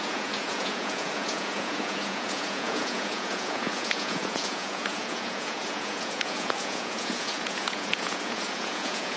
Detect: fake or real fake